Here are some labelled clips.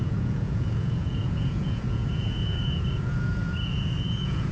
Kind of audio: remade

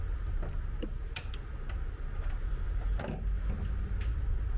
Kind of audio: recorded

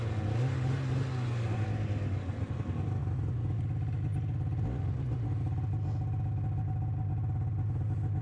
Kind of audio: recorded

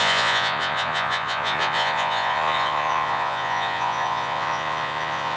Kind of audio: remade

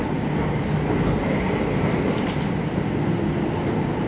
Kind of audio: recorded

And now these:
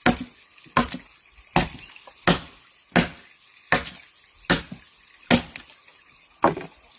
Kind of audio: recorded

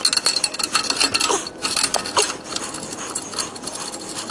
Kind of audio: recorded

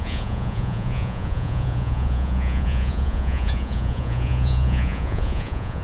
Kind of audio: remade